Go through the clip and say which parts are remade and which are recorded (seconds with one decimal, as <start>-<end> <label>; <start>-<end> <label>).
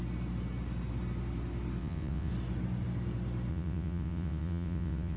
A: 0.0-1.8 recorded; 1.8-2.3 remade; 2.3-3.5 recorded; 3.5-5.2 remade